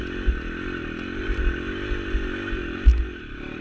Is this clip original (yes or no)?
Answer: yes